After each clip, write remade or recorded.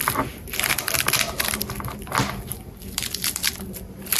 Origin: recorded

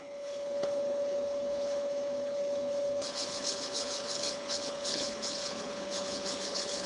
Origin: remade